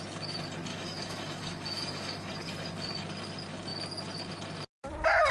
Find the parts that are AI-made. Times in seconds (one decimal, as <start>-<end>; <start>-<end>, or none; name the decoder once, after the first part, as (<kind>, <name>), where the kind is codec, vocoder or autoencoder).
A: 0.7-2.3 (autoencoder, DAC-VAE)